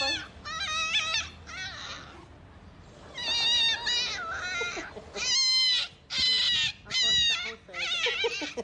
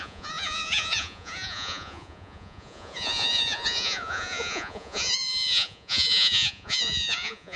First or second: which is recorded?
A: first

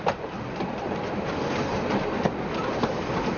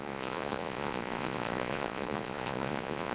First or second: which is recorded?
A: first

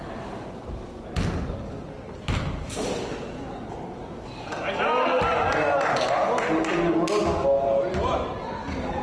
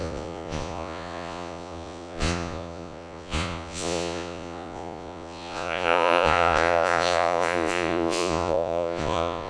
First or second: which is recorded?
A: first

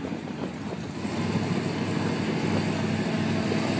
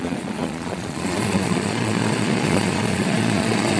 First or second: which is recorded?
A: first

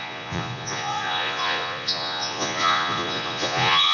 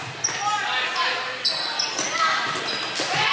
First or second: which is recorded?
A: second